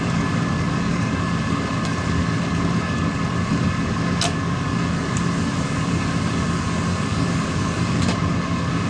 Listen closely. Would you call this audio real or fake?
fake